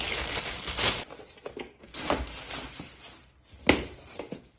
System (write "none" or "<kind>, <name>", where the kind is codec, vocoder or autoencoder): none